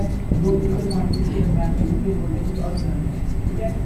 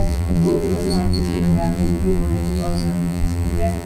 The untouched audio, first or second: first